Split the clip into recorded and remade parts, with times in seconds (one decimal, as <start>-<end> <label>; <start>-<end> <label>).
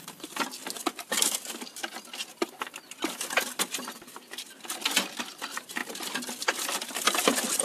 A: 0.0-0.6 remade; 0.6-5.2 recorded; 5.2-5.8 remade; 5.8-6.3 recorded; 6.3-7.6 remade